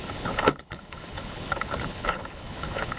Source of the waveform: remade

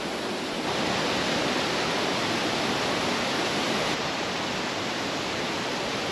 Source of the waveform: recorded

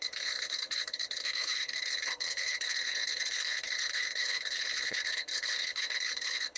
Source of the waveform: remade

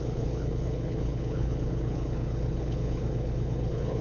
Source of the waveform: remade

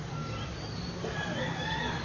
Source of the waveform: recorded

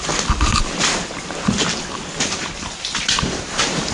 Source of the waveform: recorded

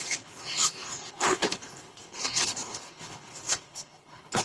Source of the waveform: remade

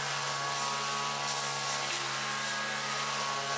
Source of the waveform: recorded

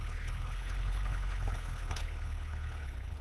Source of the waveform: remade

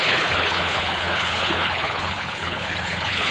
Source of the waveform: remade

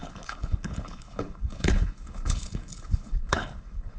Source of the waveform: remade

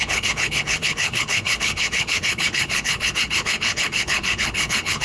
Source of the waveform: remade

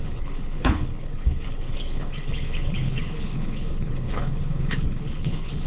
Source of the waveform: remade